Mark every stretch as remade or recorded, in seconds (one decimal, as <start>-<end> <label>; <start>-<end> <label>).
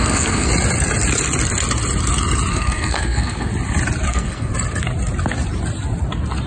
0.0-0.5 remade; 0.5-2.5 recorded; 2.5-3.5 remade; 3.5-4.1 recorded; 4.1-4.5 remade; 4.5-6.5 recorded